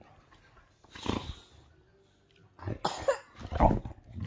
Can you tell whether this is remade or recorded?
recorded